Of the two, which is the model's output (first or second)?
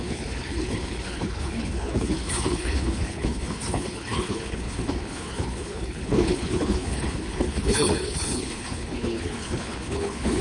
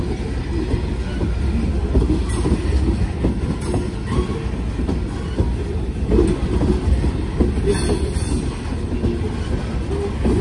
first